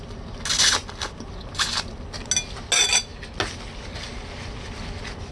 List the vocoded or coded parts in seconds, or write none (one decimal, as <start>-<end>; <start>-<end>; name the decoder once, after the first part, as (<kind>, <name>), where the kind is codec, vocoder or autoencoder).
none